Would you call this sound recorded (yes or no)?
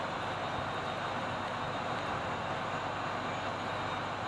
yes